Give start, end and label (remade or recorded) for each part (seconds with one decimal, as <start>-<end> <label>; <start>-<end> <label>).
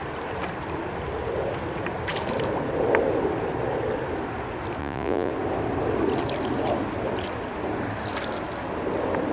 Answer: 0.0-4.8 recorded; 4.8-5.3 remade; 5.3-9.3 recorded